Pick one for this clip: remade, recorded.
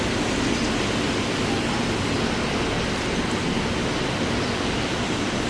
recorded